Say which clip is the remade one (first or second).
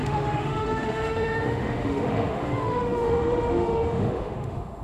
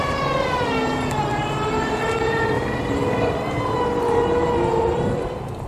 first